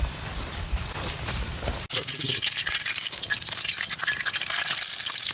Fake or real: real